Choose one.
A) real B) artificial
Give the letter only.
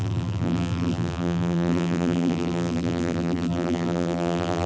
B